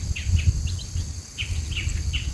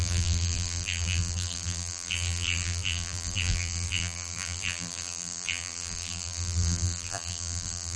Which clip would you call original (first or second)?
first